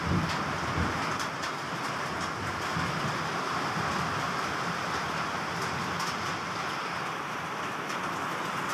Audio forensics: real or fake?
real